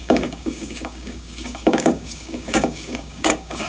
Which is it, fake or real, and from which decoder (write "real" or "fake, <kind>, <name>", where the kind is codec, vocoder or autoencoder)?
fake, codec, DAC